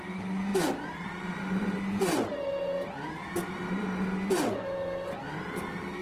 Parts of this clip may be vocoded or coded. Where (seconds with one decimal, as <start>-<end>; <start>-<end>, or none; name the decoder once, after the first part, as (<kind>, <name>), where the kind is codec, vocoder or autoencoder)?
0.5-3.7 (vocoder, BigVGAN v2)